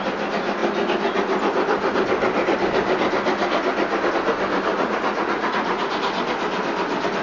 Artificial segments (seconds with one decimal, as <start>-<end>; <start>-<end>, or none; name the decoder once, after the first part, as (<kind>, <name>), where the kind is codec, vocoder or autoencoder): 4.7-5.9 (vocoder, Vocos)